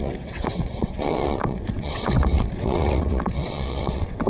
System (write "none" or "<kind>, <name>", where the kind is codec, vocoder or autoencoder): vocoder, WaveNeXt